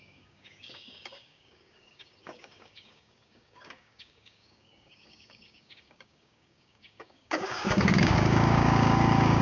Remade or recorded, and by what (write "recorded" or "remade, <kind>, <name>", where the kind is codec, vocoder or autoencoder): remade, codec, DAC